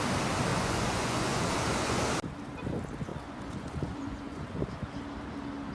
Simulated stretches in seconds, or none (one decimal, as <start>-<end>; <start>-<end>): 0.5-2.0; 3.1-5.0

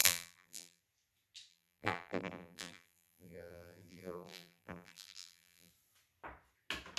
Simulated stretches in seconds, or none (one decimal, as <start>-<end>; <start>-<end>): 0.0-0.8; 1.5-5.7

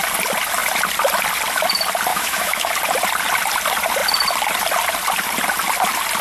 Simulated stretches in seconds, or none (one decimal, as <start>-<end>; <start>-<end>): 2.1-2.7

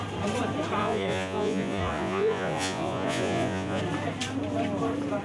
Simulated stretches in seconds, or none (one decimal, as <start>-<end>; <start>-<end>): 0.8-3.8